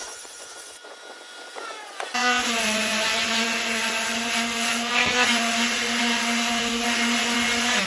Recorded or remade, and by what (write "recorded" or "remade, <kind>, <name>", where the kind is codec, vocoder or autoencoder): remade, vocoder, Vocos